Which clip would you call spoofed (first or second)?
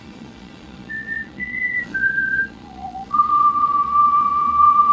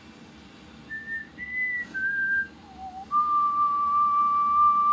first